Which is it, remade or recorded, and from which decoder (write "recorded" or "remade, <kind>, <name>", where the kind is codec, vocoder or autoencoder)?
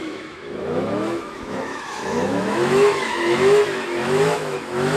remade, autoencoder, DAC-VAE